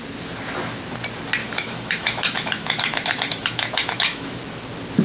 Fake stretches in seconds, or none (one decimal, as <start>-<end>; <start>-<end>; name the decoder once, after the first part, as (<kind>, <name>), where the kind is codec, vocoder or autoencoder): 1.4-4.4 (autoencoder, DAC-VAE)